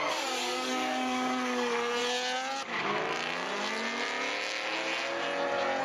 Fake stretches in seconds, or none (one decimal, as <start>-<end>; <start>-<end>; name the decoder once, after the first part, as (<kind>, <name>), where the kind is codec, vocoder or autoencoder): 0.0-2.0 (codec, DAC)